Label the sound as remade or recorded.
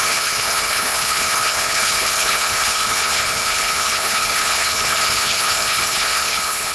remade